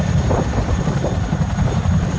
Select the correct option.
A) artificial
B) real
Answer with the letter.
B